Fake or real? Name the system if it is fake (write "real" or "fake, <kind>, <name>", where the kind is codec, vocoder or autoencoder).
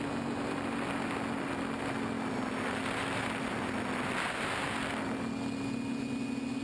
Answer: real